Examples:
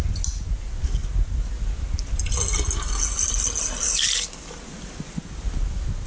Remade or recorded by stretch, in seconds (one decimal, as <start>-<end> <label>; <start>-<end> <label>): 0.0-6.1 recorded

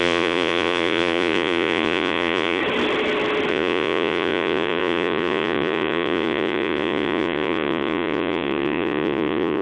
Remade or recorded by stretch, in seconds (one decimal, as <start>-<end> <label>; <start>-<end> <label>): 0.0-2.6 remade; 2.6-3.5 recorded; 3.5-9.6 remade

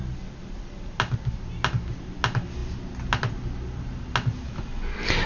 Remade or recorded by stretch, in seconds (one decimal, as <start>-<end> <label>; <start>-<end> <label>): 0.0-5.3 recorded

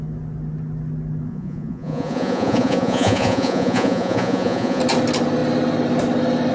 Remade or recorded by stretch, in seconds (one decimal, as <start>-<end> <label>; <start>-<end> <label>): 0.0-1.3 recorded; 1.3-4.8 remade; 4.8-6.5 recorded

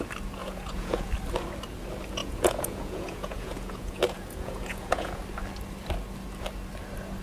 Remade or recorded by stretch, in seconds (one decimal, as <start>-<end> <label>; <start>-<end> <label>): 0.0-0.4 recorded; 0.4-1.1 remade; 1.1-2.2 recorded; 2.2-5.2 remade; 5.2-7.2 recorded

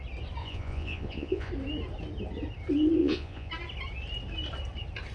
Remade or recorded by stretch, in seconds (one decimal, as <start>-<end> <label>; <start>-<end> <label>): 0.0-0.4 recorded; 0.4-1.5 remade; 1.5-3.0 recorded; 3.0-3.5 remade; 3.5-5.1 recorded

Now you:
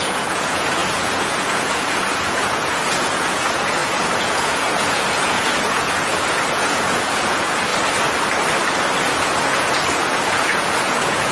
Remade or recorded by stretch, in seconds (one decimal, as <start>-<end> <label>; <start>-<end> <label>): 0.0-7.7 remade; 7.7-9.1 recorded; 9.1-11.3 remade

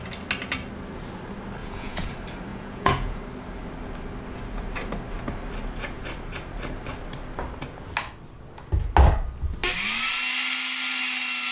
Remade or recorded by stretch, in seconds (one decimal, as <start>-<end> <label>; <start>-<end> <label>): 0.0-1.6 recorded; 1.6-2.1 remade; 2.1-2.5 recorded; 2.5-3.2 remade; 3.2-11.5 recorded